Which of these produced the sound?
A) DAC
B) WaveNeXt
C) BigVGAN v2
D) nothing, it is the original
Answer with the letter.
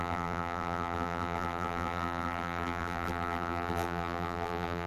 C